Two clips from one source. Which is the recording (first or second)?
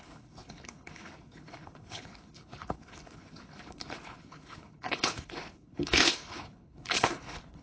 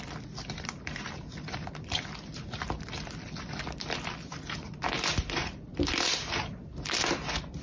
second